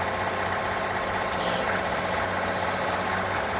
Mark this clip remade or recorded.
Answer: recorded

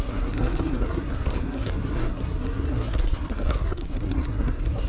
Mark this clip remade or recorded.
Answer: remade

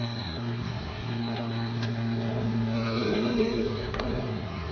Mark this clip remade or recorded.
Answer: remade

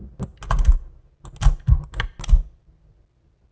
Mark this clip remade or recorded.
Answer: recorded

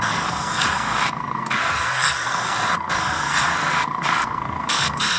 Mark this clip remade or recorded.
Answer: remade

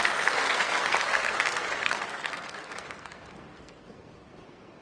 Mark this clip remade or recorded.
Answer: remade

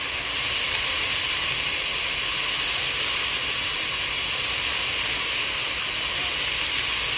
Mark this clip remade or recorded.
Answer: recorded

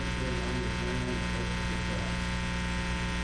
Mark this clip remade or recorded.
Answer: recorded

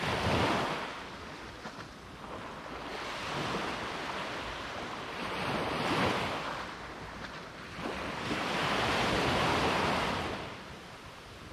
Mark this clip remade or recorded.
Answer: recorded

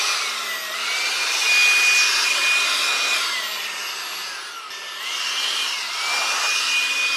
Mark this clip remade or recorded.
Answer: recorded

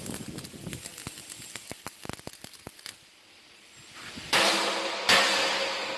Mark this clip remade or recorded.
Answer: recorded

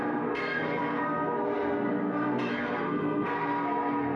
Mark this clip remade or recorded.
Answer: remade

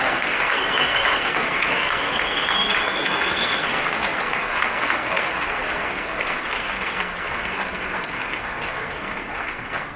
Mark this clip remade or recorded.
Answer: remade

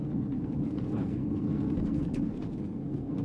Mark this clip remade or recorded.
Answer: remade